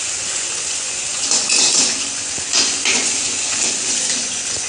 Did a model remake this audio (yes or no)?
yes